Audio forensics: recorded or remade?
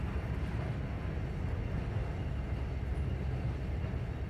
recorded